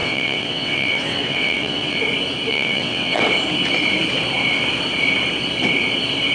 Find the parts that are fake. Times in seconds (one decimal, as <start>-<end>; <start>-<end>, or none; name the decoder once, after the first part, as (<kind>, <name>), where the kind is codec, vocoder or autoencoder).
0.0-2.0 (vocoder, WaveNeXt); 2.5-3.2

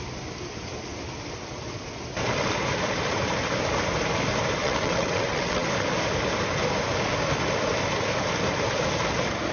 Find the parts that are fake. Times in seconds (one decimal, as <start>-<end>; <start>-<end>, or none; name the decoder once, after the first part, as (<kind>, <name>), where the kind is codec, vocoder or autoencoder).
4.6-5.7 (vocoder, WaveNeXt)

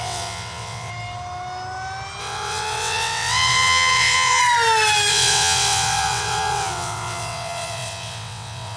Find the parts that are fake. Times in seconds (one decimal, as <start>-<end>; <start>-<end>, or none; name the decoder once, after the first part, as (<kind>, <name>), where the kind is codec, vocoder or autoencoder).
0.0-0.9 (vocoder, WaveNeXt); 2.2-4.4; 5.1-8.8

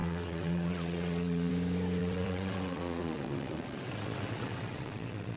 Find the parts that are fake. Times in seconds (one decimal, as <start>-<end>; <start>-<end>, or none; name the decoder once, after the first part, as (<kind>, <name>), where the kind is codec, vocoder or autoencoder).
0.0-1.5 (vocoder, WaveNeXt); 2.0-5.4